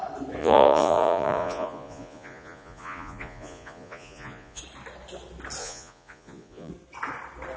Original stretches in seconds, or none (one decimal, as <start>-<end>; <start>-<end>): 0.0-0.4; 4.6-5.6; 6.7-7.6